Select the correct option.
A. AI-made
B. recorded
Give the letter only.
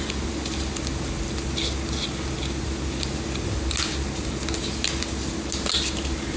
B